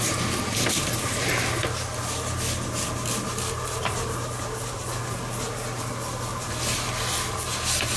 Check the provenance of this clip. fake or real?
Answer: real